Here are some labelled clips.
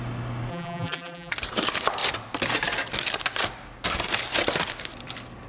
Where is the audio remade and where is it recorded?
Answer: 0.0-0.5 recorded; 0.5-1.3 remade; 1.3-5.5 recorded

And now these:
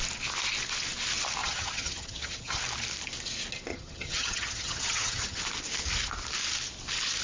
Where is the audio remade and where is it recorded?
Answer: 0.0-1.4 recorded; 1.4-2.6 remade; 2.6-3.7 recorded; 3.7-5.4 remade; 5.4-7.2 recorded

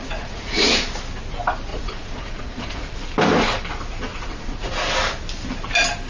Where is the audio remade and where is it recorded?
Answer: 0.0-0.7 remade; 0.7-1.7 recorded; 1.7-2.9 remade; 2.9-4.1 recorded; 4.1-4.7 remade; 4.7-6.1 recorded

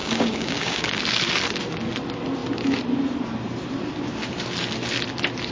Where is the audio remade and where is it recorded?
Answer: 0.0-1.0 remade; 1.0-5.5 recorded

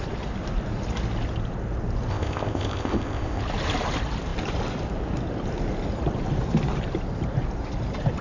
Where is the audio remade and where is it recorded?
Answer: 0.0-2.1 recorded; 2.1-3.4 remade; 3.4-8.2 recorded

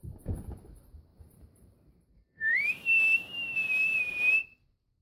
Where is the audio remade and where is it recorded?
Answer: 0.0-1.1 recorded; 1.1-4.1 remade; 4.1-5.0 recorded